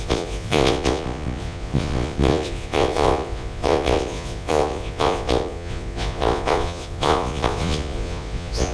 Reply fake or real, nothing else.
fake